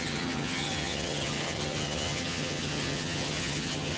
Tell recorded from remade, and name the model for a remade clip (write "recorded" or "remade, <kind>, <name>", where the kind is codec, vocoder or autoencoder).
remade, vocoder, HiFi-GAN